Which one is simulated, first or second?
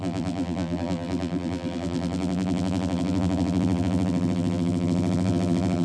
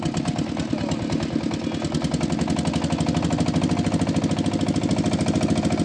first